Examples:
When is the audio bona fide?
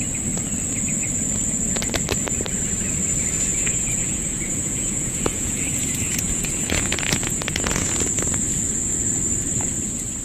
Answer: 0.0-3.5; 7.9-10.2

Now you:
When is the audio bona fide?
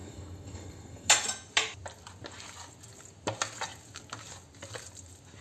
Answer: 1.1-5.4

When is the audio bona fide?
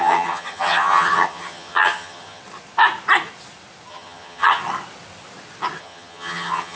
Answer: 2.4-3.9; 4.6-5.8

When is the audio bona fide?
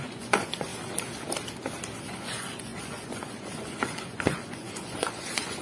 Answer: 0.7-2.0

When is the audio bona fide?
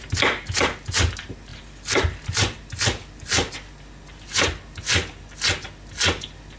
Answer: 0.0-6.6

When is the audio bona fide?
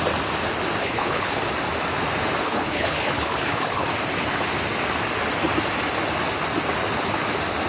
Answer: 0.0-0.8; 1.4-2.4; 3.9-7.7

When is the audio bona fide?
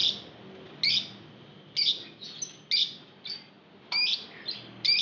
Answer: 0.0-5.0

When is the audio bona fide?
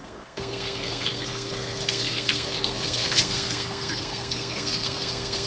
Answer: none